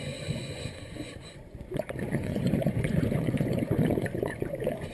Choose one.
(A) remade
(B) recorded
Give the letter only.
A